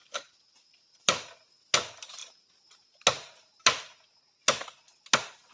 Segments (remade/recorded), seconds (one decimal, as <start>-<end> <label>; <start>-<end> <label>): 0.0-1.3 remade; 1.3-5.5 recorded